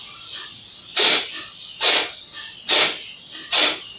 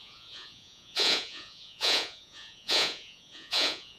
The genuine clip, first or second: first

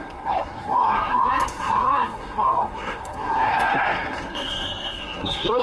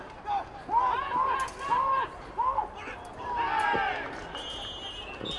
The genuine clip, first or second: second